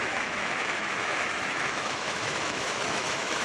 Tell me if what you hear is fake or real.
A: fake